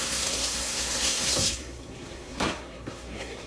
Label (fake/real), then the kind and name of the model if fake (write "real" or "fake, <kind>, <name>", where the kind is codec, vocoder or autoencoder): fake, codec, SNAC